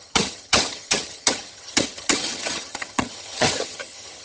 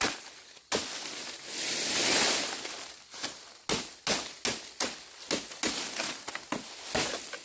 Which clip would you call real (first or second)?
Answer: second